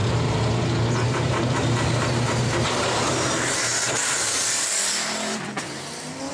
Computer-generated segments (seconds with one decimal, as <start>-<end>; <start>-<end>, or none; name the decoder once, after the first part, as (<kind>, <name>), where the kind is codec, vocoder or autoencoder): 0.0-6.3 (vocoder, BigVGAN v2)